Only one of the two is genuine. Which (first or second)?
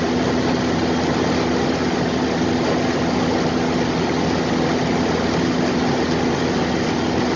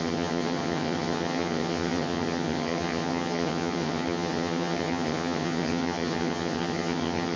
first